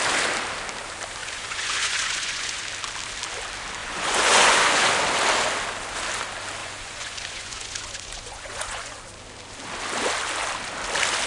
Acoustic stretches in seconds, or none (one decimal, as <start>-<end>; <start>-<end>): 0.0-1.2; 2.6-3.8; 4.9-6.6; 9.0-11.3